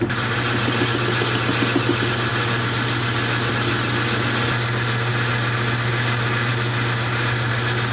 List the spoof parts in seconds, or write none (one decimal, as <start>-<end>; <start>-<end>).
none